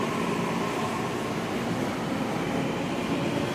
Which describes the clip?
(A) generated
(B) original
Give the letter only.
B